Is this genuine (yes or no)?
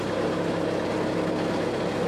yes